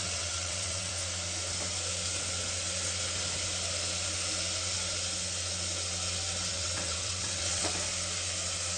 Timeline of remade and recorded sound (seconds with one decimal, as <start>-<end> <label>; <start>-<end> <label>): 0.0-0.9 remade; 0.9-6.5 recorded; 6.5-7.7 remade; 7.7-8.8 recorded